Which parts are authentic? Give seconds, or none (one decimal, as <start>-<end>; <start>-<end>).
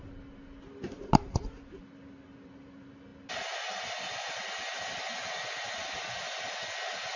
0.0-7.2